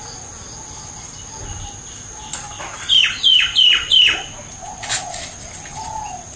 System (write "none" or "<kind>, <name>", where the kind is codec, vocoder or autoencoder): none